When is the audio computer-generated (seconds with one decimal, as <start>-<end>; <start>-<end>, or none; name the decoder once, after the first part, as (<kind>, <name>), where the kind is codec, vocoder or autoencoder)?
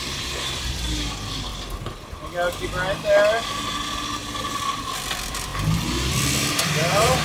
0.0-1.5 (vocoder, BigVGAN v2); 4.2-5.5; 6.1-7.2